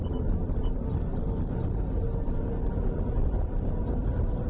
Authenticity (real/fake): real